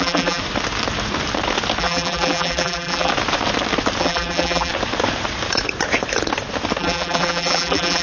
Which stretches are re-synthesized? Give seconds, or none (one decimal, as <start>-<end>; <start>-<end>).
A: 0.0-0.4; 1.8-3.1; 4.0-4.7; 6.8-8.0